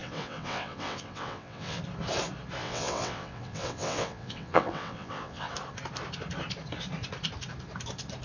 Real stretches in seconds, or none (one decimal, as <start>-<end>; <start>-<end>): 1.8-2.6; 5.5-8.2